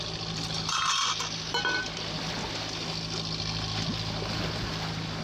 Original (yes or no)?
yes